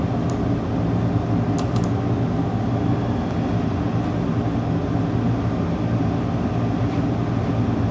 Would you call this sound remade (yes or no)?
no